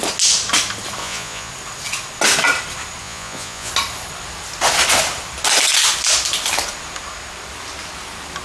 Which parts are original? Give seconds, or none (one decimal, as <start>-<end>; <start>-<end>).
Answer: 0.0-1.0; 1.5-3.0; 3.7-8.4